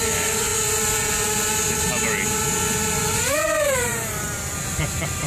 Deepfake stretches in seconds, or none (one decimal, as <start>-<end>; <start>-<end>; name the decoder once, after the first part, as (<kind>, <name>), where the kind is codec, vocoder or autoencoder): 0.0-0.5 (vocoder, BigVGAN v2); 3.1-3.9; 4.5-5.3